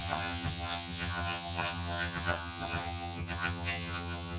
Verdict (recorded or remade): remade